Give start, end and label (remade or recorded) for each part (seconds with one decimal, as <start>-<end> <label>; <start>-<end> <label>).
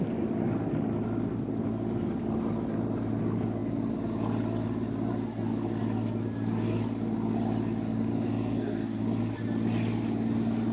0.0-8.1 recorded; 8.1-9.0 remade; 9.0-10.7 recorded